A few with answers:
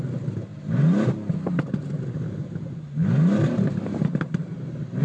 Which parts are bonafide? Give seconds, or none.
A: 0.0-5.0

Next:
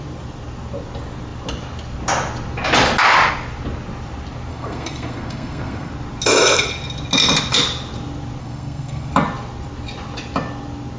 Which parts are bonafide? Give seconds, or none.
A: 0.0-4.5; 5.9-8.4; 9.1-11.0

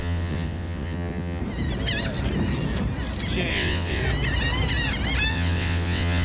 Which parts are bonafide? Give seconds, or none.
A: 1.4-3.5; 4.0-5.3

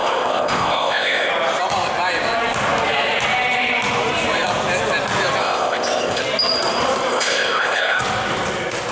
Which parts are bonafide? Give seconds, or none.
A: 1.3-5.4; 6.2-7.1; 8.0-8.9

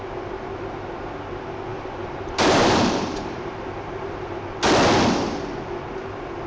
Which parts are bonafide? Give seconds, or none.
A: 0.0-1.7; 4.4-6.5

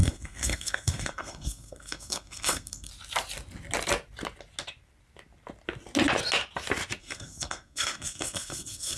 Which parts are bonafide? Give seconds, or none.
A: 2.9-7.0